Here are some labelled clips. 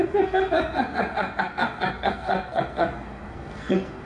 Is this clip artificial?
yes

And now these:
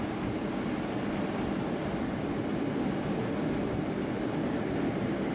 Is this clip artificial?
no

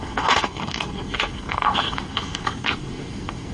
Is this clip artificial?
yes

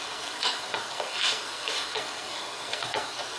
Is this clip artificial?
yes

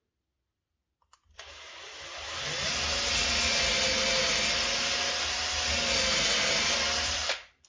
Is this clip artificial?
no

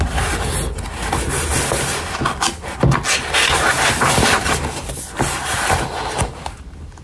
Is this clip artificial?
no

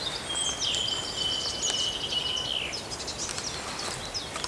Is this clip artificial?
no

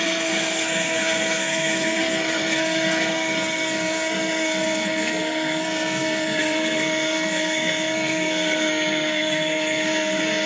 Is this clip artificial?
yes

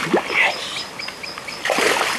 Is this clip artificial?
no